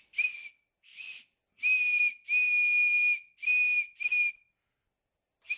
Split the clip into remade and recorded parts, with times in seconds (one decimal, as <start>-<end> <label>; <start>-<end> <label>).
0.0-5.6 recorded